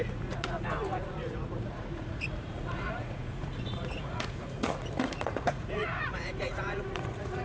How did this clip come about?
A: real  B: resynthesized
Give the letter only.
B